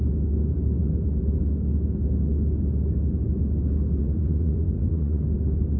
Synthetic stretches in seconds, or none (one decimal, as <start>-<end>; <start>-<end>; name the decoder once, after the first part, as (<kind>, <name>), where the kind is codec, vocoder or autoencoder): 4.0-5.2 (vocoder, Vocos)